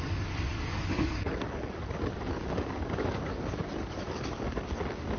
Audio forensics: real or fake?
fake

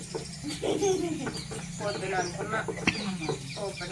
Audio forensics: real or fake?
real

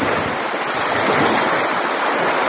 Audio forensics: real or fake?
real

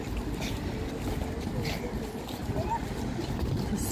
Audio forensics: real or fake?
real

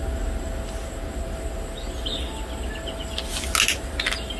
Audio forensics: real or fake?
real